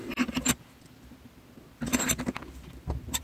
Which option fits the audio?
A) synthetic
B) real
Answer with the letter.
B